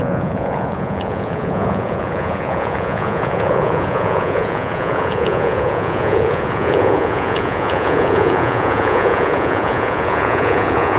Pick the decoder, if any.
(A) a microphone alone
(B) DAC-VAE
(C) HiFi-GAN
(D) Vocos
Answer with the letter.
D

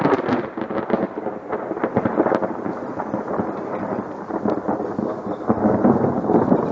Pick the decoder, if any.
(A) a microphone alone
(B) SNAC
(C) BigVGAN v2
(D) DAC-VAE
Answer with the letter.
A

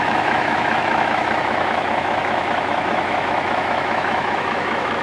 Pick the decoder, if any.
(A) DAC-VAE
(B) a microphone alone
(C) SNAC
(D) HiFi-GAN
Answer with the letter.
A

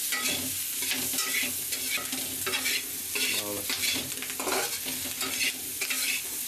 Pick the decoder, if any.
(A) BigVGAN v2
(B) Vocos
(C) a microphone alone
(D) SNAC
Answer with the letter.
C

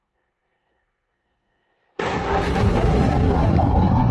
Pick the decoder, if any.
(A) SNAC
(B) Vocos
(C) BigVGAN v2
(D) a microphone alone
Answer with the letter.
A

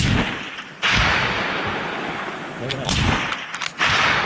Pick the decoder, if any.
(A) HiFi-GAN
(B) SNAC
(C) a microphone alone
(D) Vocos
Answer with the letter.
C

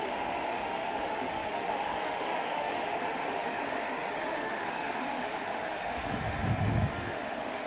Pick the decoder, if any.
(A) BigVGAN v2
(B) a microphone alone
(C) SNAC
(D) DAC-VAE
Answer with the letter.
D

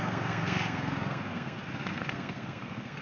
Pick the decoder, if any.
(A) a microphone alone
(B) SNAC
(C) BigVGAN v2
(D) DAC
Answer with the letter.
B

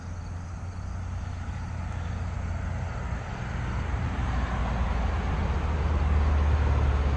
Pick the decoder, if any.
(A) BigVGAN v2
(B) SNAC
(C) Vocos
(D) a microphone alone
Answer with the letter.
D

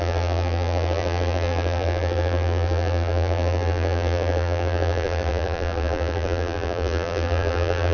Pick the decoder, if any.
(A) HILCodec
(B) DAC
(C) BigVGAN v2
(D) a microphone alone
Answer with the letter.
C